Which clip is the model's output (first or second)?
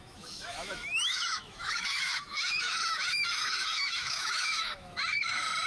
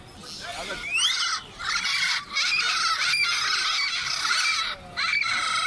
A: first